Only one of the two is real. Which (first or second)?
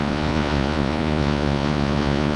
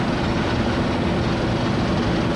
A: second